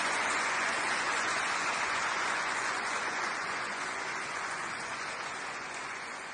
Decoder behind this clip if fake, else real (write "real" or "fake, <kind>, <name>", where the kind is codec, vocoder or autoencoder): fake, vocoder, Vocos